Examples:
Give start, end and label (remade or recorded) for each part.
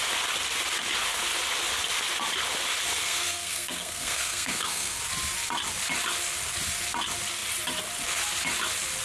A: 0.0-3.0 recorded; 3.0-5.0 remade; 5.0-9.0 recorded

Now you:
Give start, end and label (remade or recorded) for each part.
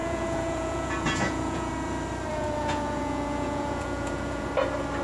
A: 0.0-1.7 remade; 1.7-2.3 recorded; 2.3-4.5 remade; 4.5-5.0 recorded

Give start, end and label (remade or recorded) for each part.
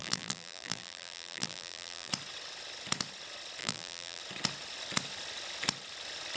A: 0.0-2.1 remade; 2.1-3.6 recorded; 3.6-4.2 remade; 4.2-6.4 recorded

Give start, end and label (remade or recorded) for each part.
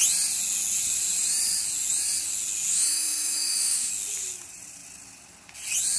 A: 0.0-2.7 recorded; 2.7-3.9 remade; 3.9-6.0 recorded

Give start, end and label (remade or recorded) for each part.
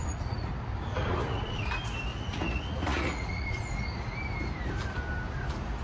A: 0.0-0.5 remade; 0.5-0.9 recorded; 0.9-1.7 remade; 1.7-2.1 recorded; 2.1-3.7 remade; 3.7-5.8 recorded